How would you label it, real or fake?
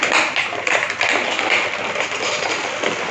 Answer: real